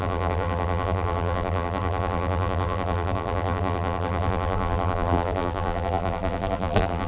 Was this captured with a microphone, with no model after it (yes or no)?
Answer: no